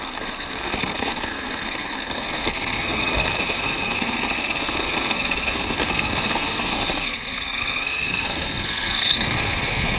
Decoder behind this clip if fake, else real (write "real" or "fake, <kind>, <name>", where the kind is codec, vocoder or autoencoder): fake, codec, SNAC